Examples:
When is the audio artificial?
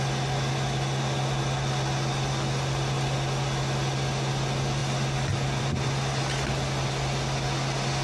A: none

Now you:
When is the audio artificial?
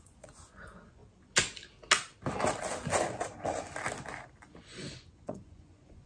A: 0.0-1.0; 4.7-6.1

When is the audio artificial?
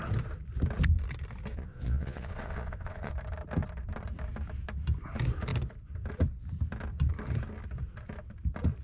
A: 1.5-3.1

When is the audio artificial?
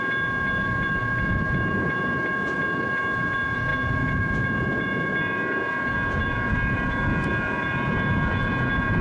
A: 0.0-9.0